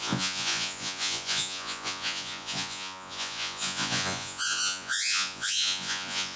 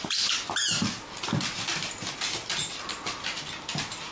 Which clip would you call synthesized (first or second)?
first